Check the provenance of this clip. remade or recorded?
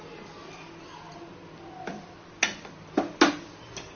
recorded